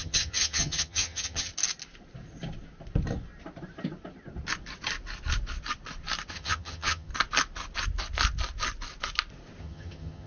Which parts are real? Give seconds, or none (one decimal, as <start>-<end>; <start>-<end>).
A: 1.5-6.3; 7.1-9.6